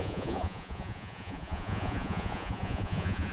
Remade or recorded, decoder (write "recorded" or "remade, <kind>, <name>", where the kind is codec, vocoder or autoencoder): remade, vocoder, Vocos